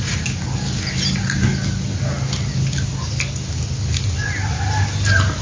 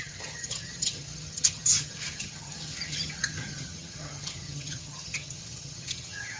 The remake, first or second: second